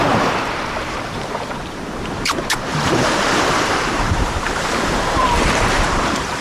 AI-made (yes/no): yes